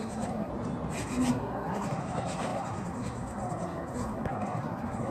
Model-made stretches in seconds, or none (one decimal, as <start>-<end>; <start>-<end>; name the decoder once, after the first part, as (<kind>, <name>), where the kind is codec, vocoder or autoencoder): 0.0-0.5 (codec, SNAC); 1.3-5.1

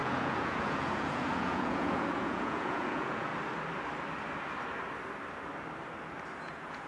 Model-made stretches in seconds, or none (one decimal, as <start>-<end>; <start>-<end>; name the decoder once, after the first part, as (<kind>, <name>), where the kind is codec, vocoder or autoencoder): 0.0-3.3 (vocoder, Vocos); 6.4-6.9

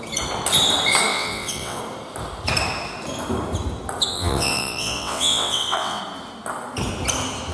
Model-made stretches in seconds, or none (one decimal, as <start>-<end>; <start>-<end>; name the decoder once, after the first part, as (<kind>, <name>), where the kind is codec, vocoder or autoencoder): 1.1-1.8 (vocoder, WaveNeXt); 4.1-6.0

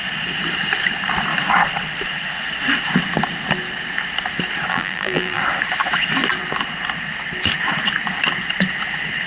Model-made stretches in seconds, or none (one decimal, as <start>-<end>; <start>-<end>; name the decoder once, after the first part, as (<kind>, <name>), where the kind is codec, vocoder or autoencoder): 4.7-5.4 (vocoder, BigVGAN v2)

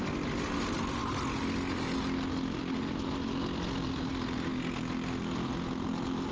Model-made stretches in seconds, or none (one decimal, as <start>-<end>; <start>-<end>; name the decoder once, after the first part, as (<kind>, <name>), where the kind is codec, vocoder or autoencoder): none